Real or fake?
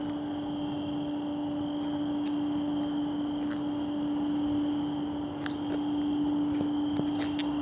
real